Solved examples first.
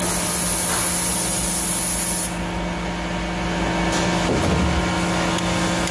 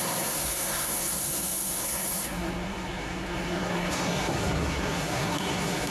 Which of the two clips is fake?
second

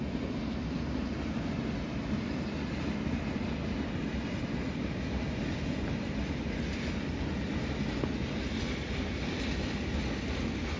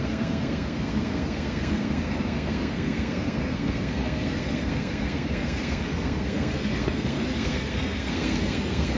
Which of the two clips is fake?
second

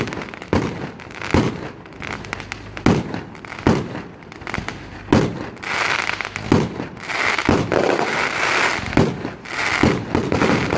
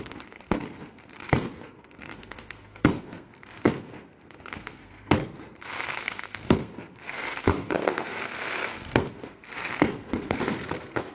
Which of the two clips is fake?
second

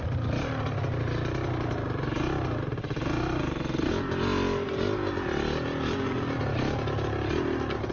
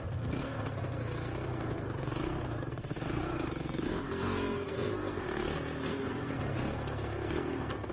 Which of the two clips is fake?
second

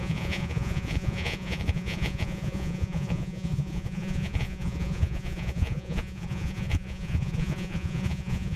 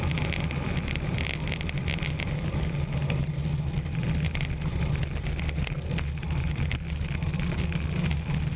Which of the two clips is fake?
first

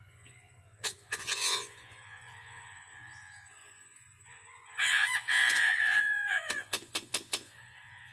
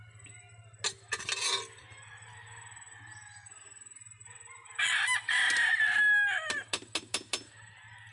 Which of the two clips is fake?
first